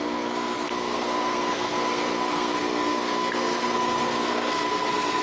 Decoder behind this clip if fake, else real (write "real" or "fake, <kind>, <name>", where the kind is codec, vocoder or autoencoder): fake, codec, SNAC